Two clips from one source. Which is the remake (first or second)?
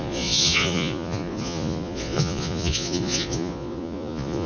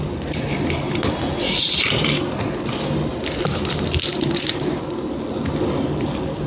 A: first